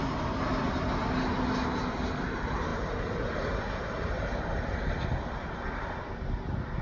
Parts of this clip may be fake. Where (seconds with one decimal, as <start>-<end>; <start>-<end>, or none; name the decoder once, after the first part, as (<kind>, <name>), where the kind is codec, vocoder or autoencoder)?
none